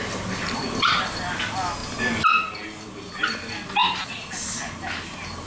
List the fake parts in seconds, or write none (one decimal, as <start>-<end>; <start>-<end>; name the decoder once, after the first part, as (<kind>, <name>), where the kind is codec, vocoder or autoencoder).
none